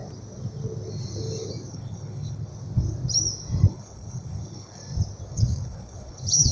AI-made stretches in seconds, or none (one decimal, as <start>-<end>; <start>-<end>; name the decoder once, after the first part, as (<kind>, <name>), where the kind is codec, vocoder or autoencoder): 1.7-2.5 (codec, HILCodec); 3.7-4.8; 5.3-6.5